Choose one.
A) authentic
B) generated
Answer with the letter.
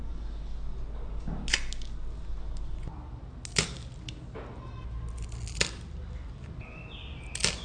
A